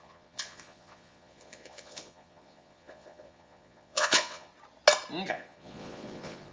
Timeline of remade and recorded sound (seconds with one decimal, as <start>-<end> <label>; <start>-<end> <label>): 0.0-4.5 remade; 4.5-5.3 recorded; 5.3-6.5 remade

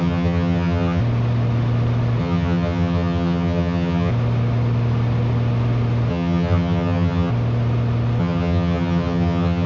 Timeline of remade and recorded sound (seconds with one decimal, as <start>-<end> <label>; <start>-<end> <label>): 0.0-1.0 remade; 1.0-2.2 recorded; 2.2-4.1 remade; 4.1-6.1 recorded; 6.1-7.3 remade; 7.3-8.2 recorded; 8.2-9.7 remade

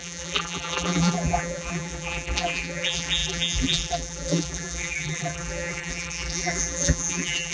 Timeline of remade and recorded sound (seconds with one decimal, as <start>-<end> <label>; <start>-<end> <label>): 0.0-7.5 remade

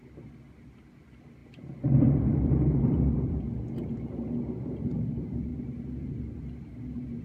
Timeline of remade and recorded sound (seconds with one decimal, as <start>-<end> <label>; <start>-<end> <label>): 0.0-1.4 recorded; 1.4-3.4 remade; 3.4-7.2 recorded

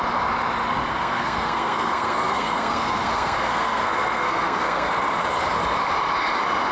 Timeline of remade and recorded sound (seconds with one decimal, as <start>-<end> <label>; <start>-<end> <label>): 0.0-0.9 recorded; 0.9-4.9 remade; 4.9-6.7 recorded

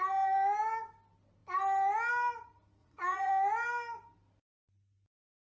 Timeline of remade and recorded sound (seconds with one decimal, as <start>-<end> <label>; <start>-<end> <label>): 0.0-2.8 recorded; 2.8-3.3 remade; 3.3-5.5 recorded

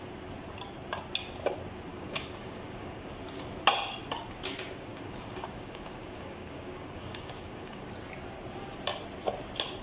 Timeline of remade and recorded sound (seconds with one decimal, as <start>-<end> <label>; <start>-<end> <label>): 0.0-1.9 recorded; 1.9-3.1 remade; 3.1-4.9 recorded; 4.9-7.9 remade; 7.9-9.8 recorded

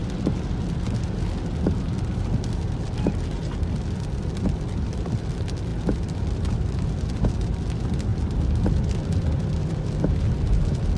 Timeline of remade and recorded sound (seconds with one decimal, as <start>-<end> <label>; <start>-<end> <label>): 0.0-3.9 recorded; 3.9-11.0 remade